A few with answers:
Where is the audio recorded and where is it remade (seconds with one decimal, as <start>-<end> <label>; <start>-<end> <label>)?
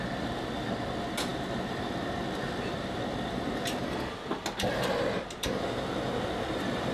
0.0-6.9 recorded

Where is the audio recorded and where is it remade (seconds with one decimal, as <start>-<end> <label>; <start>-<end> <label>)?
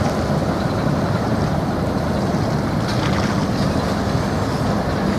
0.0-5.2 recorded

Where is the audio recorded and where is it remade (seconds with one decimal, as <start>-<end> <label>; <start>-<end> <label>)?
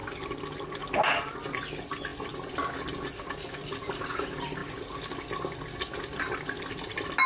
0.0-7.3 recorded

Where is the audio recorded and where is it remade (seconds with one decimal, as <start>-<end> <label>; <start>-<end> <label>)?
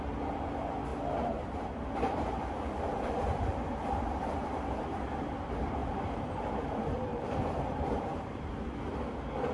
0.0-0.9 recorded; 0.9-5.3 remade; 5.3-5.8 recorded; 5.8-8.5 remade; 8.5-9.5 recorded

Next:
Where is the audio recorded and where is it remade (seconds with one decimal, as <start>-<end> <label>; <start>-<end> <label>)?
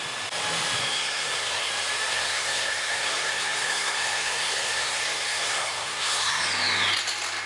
0.0-0.8 recorded; 0.8-1.7 remade; 1.7-2.1 recorded; 2.1-6.4 remade; 6.4-7.5 recorded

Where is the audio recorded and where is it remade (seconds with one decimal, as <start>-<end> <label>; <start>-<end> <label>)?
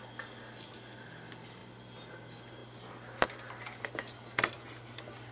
0.0-5.3 recorded